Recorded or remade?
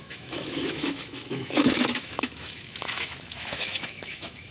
remade